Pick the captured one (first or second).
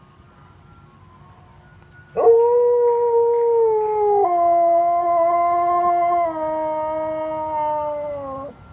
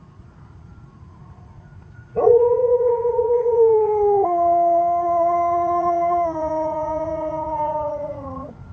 first